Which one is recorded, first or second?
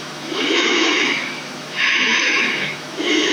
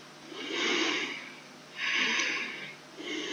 second